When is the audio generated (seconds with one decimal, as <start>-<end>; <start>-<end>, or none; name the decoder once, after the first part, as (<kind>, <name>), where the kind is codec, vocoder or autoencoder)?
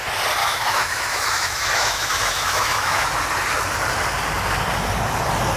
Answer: 0.4-3.1 (autoencoder, DAC-VAE)